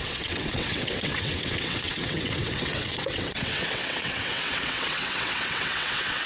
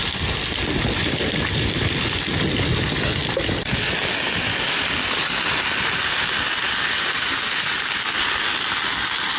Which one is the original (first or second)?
second